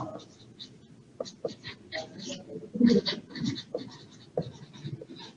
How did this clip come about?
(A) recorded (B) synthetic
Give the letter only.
A